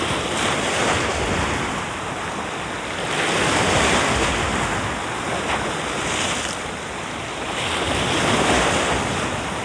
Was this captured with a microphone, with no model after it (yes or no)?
yes